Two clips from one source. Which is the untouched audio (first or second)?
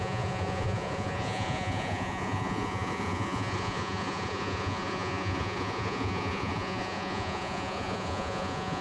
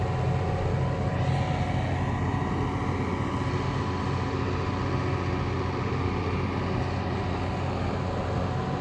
second